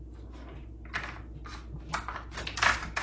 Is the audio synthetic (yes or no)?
no